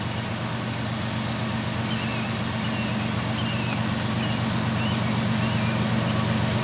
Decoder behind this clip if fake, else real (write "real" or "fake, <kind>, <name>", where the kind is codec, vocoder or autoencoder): real